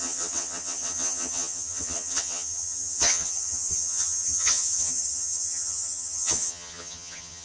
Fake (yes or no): yes